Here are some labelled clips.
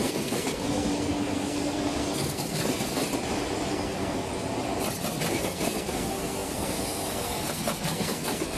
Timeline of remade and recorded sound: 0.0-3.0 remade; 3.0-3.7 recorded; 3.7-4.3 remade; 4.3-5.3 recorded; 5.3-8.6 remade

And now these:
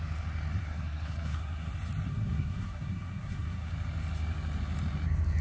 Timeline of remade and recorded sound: 0.0-0.6 recorded; 0.6-1.7 remade; 1.7-2.1 recorded; 2.1-3.7 remade; 3.7-5.4 recorded

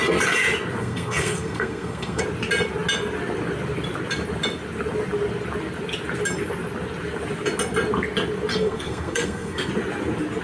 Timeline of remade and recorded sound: 0.0-0.8 recorded; 0.8-2.2 remade; 2.2-8.5 recorded; 8.5-9.7 remade; 9.7-10.4 recorded

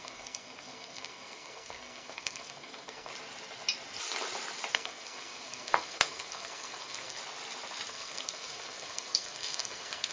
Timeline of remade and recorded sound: 0.0-3.1 remade; 3.1-4.7 recorded; 4.7-7.2 remade; 7.2-7.9 recorded; 7.9-10.1 remade

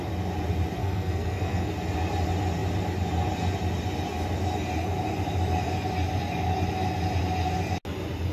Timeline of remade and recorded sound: 0.0-0.8 recorded; 0.8-1.7 remade; 1.7-8.3 recorded